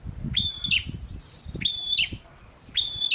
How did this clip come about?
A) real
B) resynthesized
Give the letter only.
A